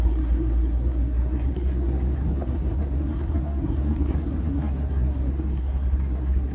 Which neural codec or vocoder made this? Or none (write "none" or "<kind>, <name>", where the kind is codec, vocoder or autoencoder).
codec, SNAC